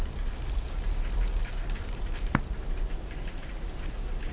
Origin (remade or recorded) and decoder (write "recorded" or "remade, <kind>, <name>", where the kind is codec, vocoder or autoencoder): remade, vocoder, BigVGAN v2